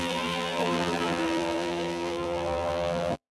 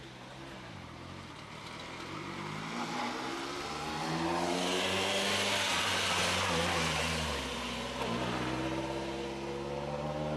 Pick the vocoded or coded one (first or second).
first